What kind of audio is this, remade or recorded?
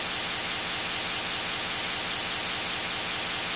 recorded